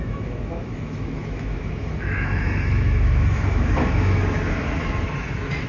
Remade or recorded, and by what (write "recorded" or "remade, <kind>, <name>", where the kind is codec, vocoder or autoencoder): remade, autoencoder, DAC-VAE